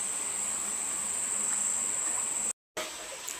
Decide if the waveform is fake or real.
real